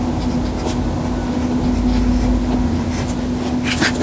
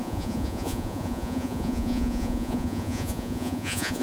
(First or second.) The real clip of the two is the first